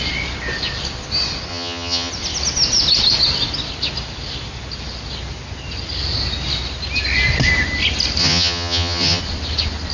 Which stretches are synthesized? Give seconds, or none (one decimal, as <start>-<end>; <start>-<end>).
1.5-2.1; 8.2-9.2